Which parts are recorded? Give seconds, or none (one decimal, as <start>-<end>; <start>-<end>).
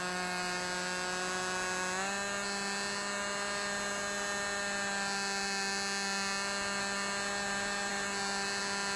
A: 0.0-9.0